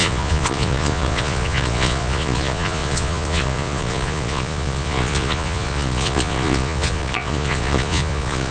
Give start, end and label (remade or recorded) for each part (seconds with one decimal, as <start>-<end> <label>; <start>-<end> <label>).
0.0-8.5 remade